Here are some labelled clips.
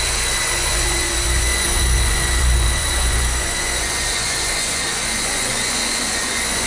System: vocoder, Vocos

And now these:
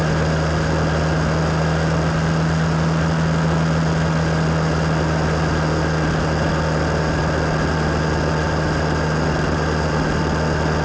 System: none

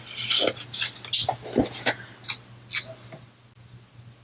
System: none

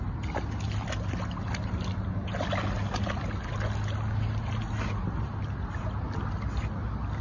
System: none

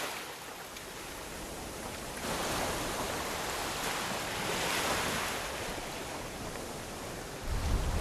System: none